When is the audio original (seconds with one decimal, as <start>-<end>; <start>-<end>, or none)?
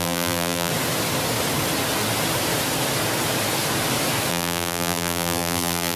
0.7-4.3